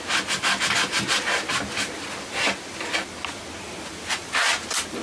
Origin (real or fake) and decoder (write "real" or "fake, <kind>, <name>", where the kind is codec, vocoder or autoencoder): real